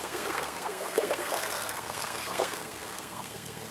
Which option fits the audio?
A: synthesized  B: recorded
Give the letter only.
A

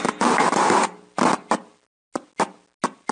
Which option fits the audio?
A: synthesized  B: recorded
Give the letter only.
B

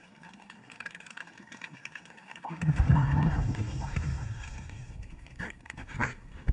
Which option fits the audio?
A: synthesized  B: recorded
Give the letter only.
A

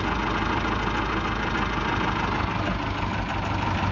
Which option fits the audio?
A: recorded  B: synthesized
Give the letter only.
A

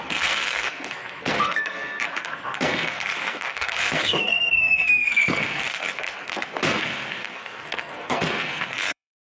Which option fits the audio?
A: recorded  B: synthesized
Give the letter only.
B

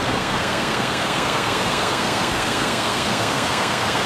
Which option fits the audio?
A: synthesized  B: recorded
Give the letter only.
A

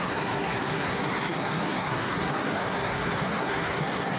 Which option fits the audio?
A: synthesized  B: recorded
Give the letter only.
A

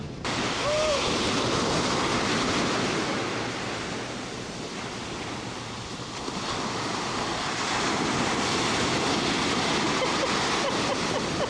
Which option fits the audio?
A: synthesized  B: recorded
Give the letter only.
B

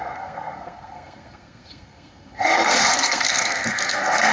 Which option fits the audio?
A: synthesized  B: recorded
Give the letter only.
A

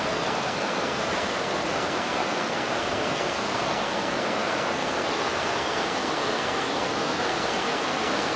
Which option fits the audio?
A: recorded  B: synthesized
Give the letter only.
B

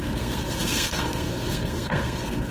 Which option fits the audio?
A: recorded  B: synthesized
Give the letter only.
B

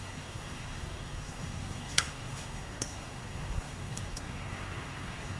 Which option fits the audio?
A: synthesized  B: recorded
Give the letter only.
A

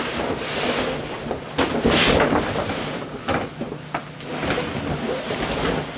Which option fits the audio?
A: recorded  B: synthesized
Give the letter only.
A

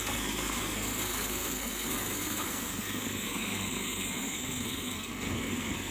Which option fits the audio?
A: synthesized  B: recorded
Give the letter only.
A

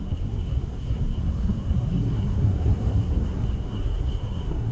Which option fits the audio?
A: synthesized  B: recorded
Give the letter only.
A